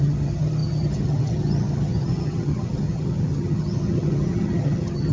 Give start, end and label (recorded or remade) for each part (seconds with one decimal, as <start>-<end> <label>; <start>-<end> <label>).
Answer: 0.0-5.1 remade